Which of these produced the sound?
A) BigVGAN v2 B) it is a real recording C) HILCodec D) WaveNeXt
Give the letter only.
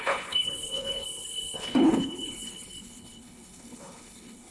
C